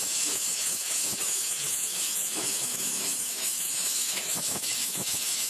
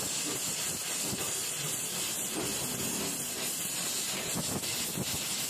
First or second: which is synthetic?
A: first